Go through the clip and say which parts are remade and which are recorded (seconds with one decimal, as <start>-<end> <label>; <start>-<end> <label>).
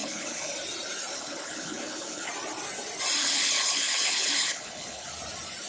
0.0-0.5 remade; 0.5-1.1 recorded; 1.1-2.3 remade; 2.3-3.2 recorded; 3.2-5.1 remade; 5.1-5.7 recorded